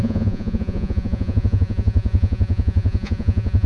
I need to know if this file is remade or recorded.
remade